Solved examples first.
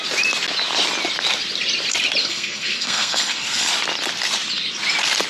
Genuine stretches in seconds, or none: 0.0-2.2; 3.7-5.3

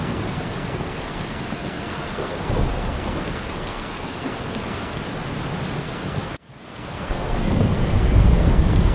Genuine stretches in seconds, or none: 5.0-5.8

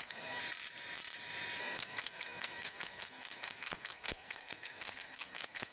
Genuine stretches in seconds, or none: 0.4-1.6

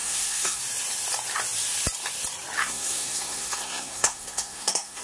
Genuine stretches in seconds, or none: 0.6-2.6

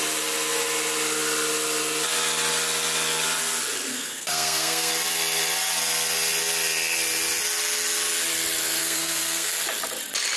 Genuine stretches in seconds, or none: 0.0-3.9; 4.9-8.8; 9.6-10.4